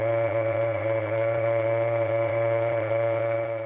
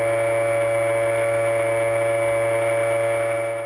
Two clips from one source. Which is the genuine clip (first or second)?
second